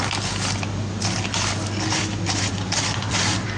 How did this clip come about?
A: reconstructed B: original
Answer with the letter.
B